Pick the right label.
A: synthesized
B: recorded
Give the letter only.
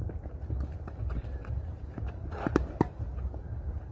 A